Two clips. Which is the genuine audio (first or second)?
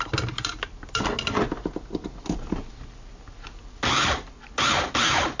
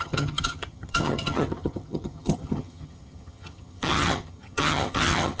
first